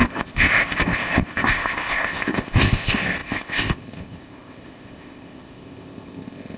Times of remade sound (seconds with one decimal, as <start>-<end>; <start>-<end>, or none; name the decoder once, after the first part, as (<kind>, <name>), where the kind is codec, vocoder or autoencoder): 0.0-6.6 (codec, ZipCodec)